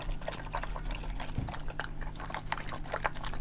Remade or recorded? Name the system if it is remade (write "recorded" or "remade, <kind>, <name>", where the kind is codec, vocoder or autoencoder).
recorded